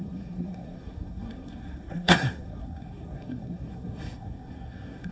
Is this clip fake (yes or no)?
yes